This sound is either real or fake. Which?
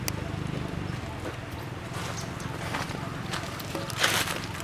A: real